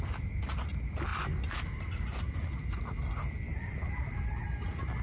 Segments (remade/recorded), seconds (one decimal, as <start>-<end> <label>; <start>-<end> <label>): 0.0-3.5 recorded; 3.5-4.3 remade; 4.3-5.0 recorded